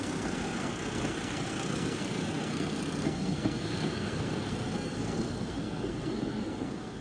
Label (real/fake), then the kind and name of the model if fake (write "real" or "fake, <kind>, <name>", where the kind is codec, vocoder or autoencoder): fake, codec, SNAC